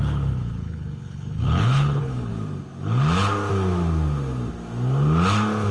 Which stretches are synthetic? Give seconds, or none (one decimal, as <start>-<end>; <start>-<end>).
0.0-2.3